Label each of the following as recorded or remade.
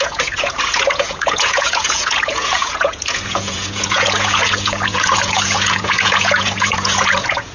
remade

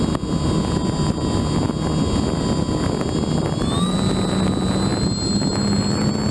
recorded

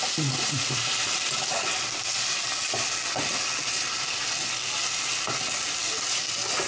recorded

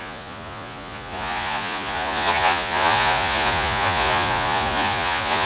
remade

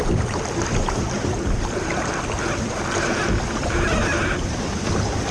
remade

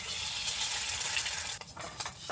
recorded